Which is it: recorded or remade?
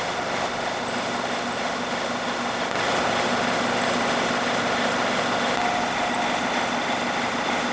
recorded